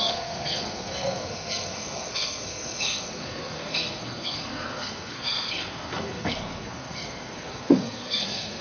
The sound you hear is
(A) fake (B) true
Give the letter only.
A